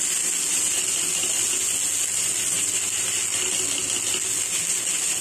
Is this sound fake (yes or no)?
no